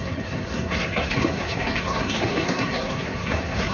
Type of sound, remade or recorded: remade